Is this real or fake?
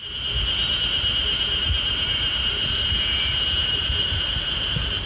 real